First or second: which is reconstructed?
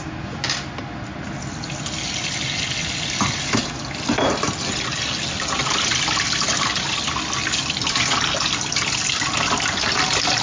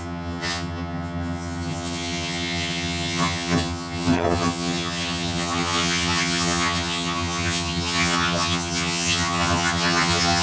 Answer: second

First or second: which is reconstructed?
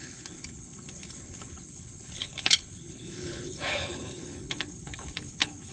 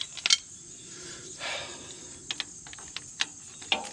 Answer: first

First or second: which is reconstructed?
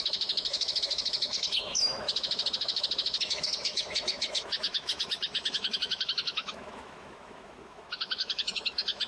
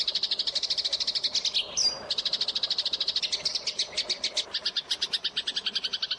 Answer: first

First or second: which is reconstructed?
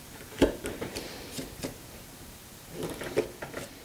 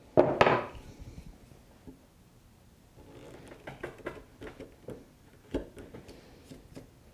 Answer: first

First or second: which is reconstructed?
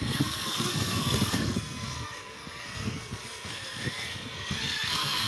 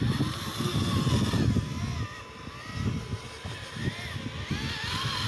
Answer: first